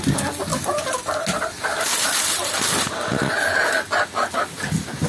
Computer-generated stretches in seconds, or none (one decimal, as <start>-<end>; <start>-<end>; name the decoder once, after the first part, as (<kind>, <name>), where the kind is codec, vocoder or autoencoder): none